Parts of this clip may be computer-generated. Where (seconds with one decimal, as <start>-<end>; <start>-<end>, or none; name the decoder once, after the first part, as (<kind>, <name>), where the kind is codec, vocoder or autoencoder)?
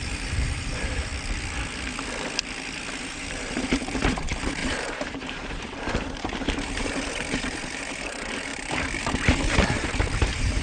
0.0-1.1 (vocoder, BigVGAN v2); 3.0-8.5; 9.0-10.6